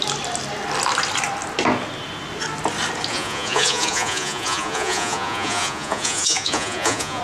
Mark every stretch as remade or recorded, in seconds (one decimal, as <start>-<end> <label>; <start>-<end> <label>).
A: 0.0-3.1 recorded; 3.1-7.2 remade